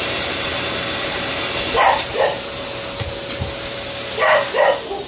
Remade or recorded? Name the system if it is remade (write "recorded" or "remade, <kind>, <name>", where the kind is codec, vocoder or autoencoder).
recorded